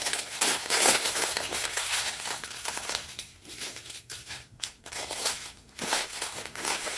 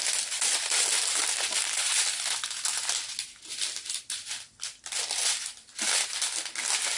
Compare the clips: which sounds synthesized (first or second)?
first